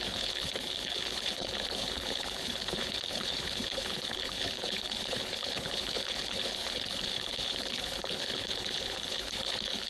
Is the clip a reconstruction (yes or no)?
yes